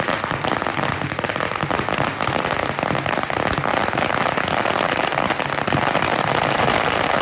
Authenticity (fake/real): real